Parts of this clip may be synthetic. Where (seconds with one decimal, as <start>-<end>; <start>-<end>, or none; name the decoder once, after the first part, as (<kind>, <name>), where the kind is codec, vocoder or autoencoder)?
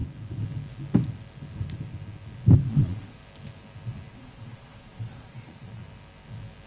2.7-3.2 (vocoder, Vocos); 4.1-5.8